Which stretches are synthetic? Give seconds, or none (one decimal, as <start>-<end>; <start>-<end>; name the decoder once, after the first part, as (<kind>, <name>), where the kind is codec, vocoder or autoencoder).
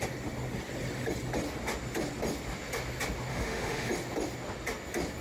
3.3-3.9 (autoencoder, DAC-VAE)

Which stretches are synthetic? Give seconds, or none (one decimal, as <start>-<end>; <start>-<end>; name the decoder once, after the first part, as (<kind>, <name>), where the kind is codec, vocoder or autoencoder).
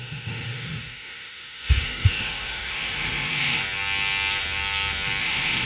0.0-3.6 (autoencoder, DAC-VAE); 5.2-5.7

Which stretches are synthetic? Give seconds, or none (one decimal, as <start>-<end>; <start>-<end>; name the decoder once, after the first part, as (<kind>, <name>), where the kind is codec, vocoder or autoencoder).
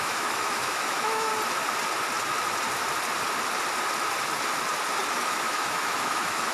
0.0-1.3 (autoencoder, DAC-VAE); 5.1-6.5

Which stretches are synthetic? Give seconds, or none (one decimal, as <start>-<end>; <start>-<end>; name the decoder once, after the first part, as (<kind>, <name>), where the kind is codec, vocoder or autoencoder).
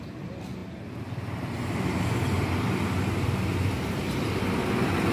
none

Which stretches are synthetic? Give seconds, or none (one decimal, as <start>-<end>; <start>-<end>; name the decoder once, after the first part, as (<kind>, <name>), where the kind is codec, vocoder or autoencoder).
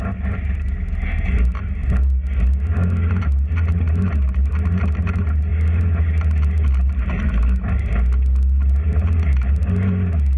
none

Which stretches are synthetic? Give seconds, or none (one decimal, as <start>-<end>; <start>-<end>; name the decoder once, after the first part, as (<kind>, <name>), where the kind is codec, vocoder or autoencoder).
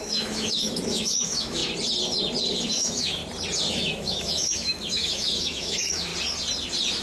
0.0-1.6 (autoencoder, DAC-VAE); 2.7-3.2; 3.7-6.1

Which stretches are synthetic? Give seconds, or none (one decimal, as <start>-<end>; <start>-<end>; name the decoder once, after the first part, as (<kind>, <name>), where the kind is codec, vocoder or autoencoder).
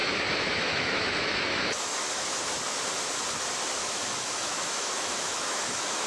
0.0-2.4 (autoencoder, DAC-VAE); 3.8-6.1